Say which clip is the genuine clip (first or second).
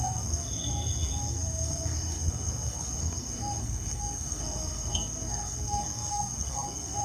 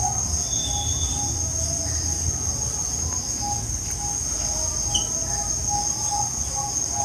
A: second